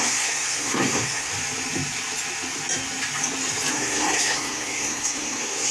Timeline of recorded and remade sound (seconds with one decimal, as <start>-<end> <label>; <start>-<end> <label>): 0.0-1.3 remade; 1.3-3.7 recorded; 3.7-5.7 remade